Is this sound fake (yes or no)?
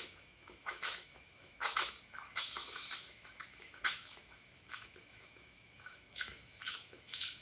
yes